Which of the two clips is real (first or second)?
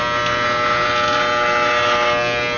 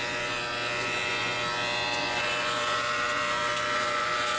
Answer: first